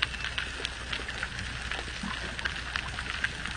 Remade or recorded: recorded